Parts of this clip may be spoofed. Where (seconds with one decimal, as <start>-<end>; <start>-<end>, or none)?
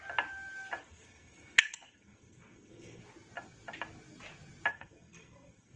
0.8-3.0; 4.7-5.8